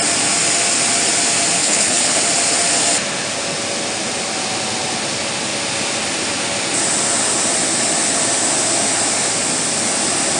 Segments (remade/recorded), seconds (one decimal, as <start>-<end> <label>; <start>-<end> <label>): 0.0-1.6 recorded; 1.6-2.2 remade; 2.2-10.4 recorded